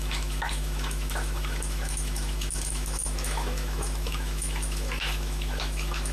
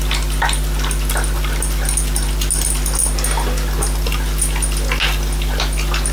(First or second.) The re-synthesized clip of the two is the first